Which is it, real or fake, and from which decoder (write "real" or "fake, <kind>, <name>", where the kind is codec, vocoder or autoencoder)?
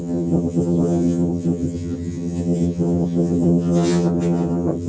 fake, vocoder, HiFi-GAN